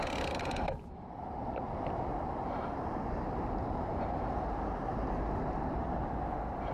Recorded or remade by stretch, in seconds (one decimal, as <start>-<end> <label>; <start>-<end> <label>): 0.0-2.1 recorded; 2.1-6.1 remade; 6.1-6.7 recorded